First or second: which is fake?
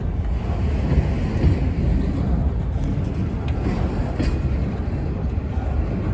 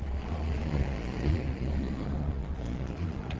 second